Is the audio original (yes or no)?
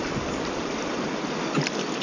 yes